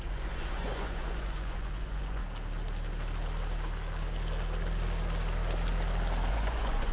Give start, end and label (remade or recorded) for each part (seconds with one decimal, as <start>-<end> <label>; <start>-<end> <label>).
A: 0.0-2.2 remade; 2.2-6.3 recorded; 6.3-6.9 remade